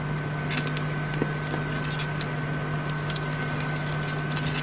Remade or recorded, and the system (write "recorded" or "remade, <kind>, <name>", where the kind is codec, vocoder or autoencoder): recorded